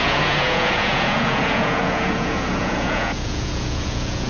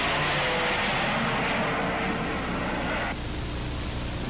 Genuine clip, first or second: second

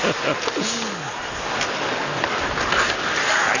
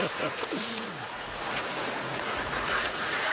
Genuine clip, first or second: first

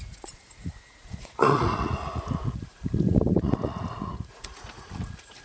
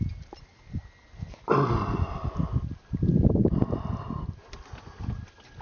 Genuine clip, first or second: second